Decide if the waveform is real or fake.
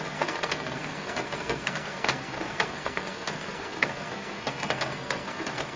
fake